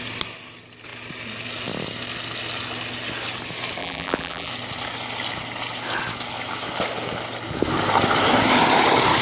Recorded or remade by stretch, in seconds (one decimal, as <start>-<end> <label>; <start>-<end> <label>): 0.0-3.8 recorded; 3.8-4.5 remade; 4.5-9.2 recorded